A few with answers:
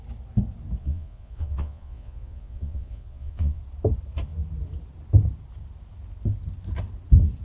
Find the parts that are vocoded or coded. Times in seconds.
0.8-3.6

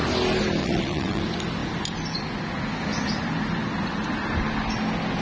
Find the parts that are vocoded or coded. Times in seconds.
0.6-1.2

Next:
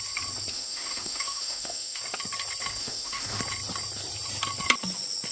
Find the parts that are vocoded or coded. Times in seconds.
0.5-2.0; 2.8-3.4